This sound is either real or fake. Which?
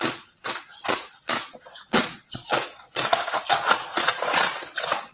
fake